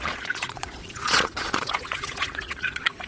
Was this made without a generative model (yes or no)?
no